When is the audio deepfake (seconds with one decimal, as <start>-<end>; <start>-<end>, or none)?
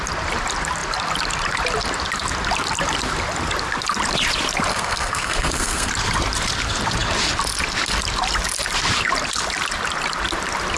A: 4.7-5.9